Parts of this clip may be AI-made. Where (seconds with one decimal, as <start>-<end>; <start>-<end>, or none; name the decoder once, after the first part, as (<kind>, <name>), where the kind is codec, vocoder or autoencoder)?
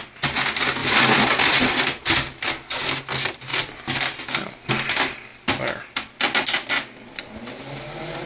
none